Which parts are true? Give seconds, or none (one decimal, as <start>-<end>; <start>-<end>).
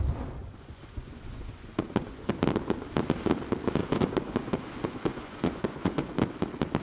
0.0-0.4; 2.3-3.8; 6.3-6.8